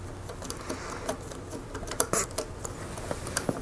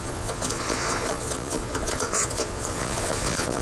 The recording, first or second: first